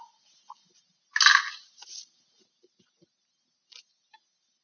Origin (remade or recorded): recorded